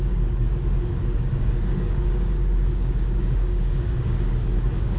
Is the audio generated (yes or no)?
yes